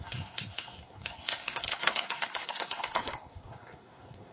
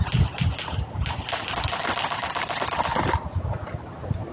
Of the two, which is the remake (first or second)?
first